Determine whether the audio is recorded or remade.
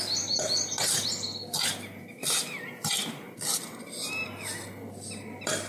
recorded